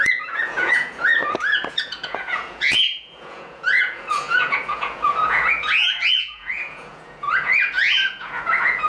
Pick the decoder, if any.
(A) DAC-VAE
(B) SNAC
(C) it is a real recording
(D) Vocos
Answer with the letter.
D